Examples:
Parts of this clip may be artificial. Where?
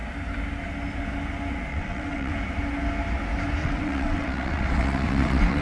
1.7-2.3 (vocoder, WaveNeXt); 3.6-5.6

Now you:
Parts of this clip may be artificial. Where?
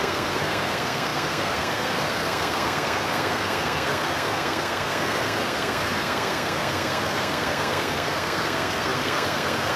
0.0-9.8 (codec, SNAC)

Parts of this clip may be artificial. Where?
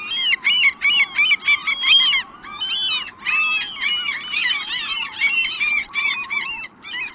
4.4-7.1 (vocoder, BigVGAN v2)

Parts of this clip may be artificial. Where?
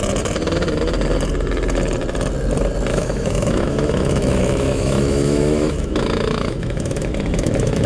2.9-7.9 (autoencoder, DAC-VAE)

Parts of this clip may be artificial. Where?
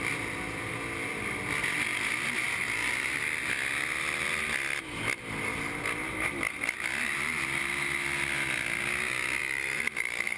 9.4-10.4 (vocoder, BigVGAN v2)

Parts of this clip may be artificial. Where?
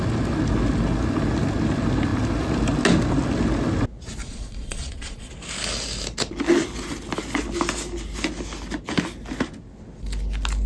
4.2-5.3 (vocoder, Vocos)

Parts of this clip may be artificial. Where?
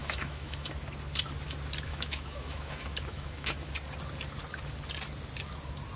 0.0-0.7 (autoencoder, DAC-VAE); 1.9-3.7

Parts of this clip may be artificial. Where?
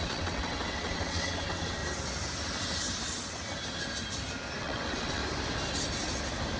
0.0-1.8 (vocoder, WaveNeXt); 4.6-5.2